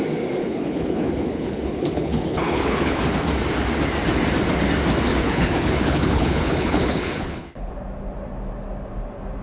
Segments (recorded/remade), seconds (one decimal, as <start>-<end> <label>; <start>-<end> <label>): 0.0-0.4 recorded; 0.4-3.0 remade; 3.0-5.1 recorded; 5.1-7.7 remade; 7.7-9.4 recorded